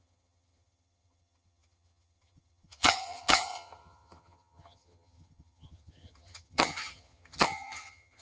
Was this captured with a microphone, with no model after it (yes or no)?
no